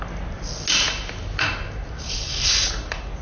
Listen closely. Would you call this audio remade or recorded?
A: recorded